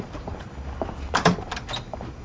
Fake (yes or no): yes